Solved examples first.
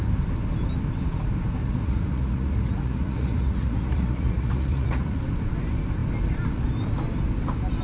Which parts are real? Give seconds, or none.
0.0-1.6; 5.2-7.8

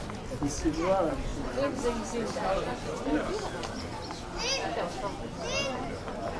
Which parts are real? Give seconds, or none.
0.0-6.4